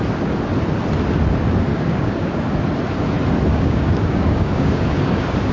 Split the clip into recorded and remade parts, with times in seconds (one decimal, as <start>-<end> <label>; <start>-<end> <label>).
0.0-1.7 recorded; 1.7-2.5 remade; 2.5-3.5 recorded; 3.5-5.5 remade